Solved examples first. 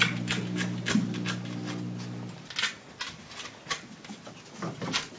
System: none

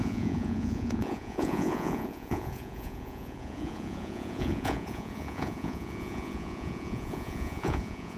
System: vocoder, Vocos